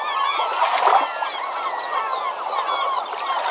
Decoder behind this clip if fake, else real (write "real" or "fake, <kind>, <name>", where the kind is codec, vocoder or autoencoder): real